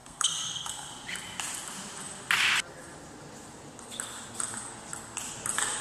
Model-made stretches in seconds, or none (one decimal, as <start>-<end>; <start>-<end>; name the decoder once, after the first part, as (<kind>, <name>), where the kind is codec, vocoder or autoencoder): 0.0-0.9 (codec, SNAC)